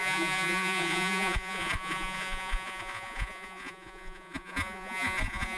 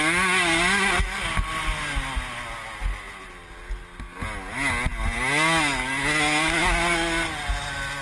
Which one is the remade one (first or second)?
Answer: first